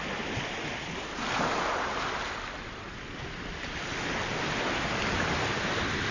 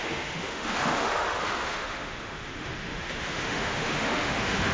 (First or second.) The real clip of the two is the first